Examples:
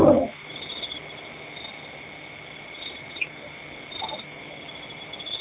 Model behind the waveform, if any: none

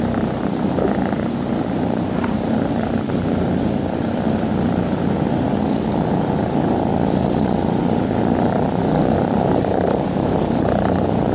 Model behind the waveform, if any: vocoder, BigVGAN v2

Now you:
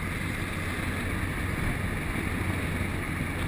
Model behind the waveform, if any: none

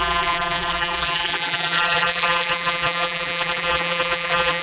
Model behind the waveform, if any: vocoder, BigVGAN v2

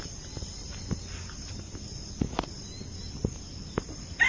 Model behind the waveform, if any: none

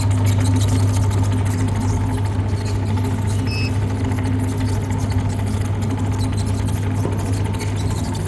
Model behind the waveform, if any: none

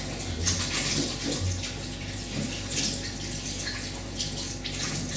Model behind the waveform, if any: none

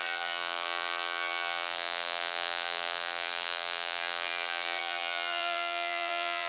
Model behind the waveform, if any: vocoder, BigVGAN v2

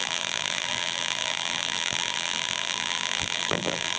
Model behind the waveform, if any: vocoder, BigVGAN v2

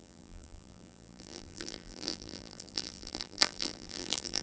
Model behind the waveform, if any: vocoder, BigVGAN v2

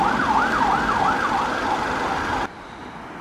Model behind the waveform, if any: none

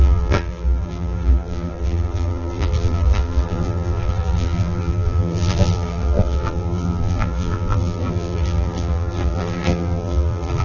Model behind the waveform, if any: vocoder, BigVGAN v2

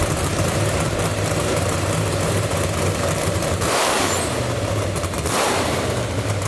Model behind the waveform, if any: vocoder, BigVGAN v2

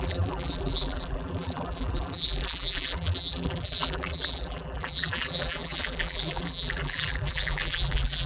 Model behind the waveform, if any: vocoder, BigVGAN v2